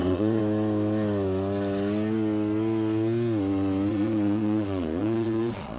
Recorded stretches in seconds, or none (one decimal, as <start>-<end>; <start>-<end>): 0.4-3.9